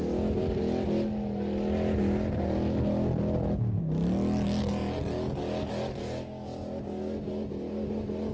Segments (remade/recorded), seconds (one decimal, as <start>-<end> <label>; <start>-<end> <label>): 0.0-8.3 recorded